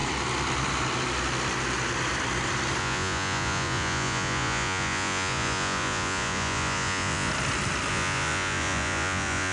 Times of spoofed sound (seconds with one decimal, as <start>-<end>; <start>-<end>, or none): 2.8-7.3; 7.9-9.5